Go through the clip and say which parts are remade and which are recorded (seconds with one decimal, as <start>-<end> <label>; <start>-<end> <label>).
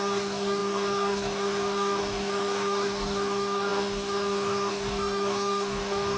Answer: 0.0-6.2 remade